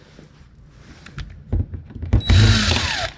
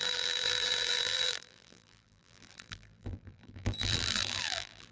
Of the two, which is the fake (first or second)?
second